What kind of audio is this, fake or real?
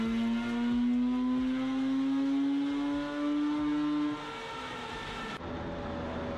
real